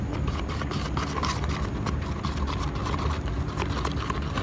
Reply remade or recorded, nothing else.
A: recorded